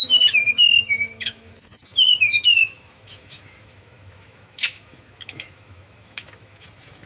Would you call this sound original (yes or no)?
no